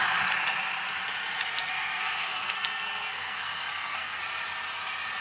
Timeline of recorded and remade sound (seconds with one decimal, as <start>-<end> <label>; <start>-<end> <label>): 0.0-1.5 recorded; 1.5-4.2 remade; 4.2-5.2 recorded